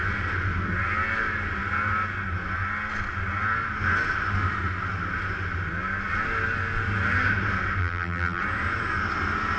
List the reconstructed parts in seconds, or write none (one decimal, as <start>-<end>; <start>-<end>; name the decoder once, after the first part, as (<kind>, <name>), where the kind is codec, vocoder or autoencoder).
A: 7.8-8.4 (vocoder, BigVGAN v2)